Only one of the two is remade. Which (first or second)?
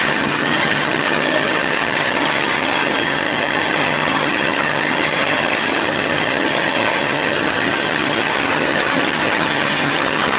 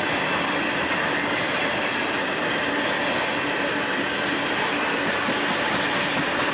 first